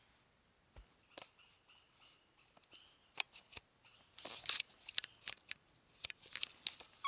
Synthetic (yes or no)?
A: no